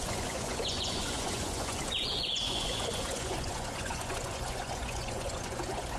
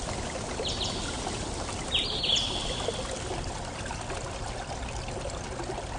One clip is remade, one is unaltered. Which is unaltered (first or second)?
second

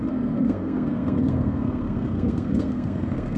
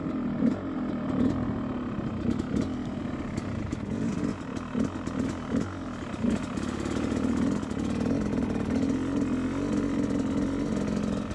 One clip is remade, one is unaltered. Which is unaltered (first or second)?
second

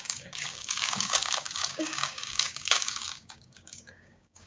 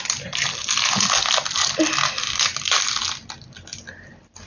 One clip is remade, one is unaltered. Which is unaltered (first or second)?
second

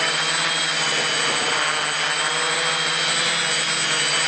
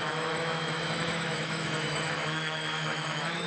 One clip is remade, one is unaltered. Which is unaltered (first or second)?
first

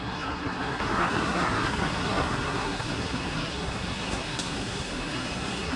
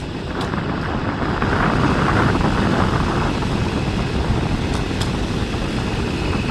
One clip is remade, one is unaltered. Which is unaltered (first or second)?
second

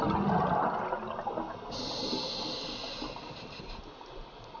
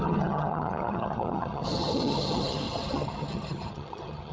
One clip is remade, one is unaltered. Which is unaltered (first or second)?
first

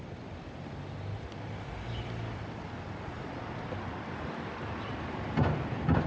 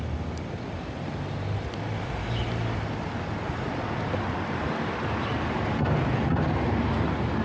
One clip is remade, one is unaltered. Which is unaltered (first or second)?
second